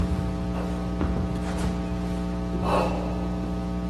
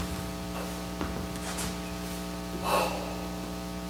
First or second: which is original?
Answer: first